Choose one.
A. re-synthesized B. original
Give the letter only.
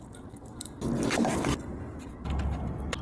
B